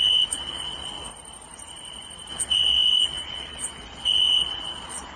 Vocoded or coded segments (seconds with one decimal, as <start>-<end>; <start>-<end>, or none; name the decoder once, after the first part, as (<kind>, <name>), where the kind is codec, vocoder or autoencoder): 0.0-1.1 (vocoder, Vocos); 2.3-5.2

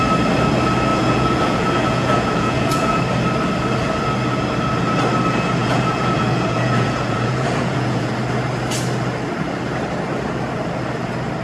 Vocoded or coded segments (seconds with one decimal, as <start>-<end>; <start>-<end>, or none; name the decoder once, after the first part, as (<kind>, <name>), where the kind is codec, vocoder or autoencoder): 0.9-3.0 (vocoder, Vocos); 5.6-8.1

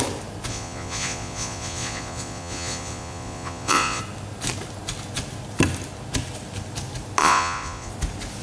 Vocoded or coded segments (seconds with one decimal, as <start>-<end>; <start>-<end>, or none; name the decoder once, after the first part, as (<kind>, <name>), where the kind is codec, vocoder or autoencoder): 0.5-4.0 (vocoder, Vocos); 7.2-7.9

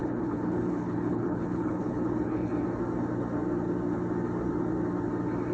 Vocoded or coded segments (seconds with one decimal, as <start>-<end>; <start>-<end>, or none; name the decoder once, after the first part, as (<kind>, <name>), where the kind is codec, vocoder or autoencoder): 0.0-2.5 (codec, HILCodec)

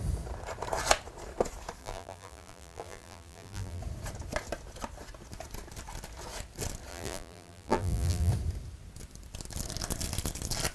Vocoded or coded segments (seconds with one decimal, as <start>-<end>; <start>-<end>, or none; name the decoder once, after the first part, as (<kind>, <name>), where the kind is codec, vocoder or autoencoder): 1.8-3.8 (vocoder, BigVGAN v2); 6.9-8.3

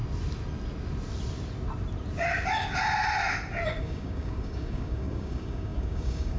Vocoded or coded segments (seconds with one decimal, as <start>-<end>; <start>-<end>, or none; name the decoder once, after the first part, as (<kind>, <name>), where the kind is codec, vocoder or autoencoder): 3.8-6.4 (codec, DAC)